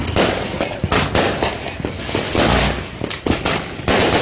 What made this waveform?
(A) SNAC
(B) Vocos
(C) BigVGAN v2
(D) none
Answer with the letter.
D